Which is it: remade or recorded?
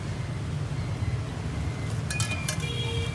recorded